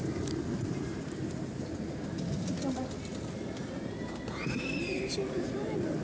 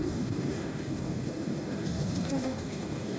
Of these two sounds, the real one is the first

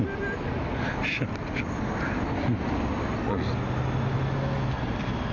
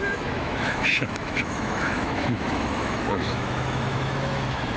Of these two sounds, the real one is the first